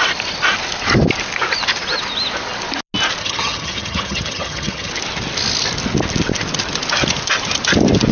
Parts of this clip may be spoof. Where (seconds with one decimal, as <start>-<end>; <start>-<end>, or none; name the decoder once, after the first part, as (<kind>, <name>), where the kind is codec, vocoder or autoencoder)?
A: 3.2-4.9 (vocoder, HiFi-GAN)